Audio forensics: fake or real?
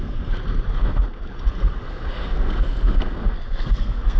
fake